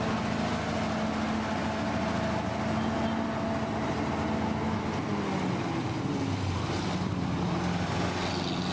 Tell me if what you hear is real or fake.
real